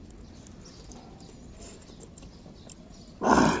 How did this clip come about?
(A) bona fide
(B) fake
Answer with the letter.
A